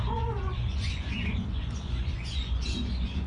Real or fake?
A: fake